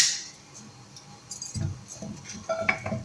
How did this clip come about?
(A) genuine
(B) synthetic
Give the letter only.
A